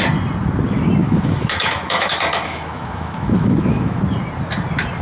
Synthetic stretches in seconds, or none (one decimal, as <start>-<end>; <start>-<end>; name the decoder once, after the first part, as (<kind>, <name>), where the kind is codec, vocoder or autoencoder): 1.0-4.0 (autoencoder, DAC-VAE)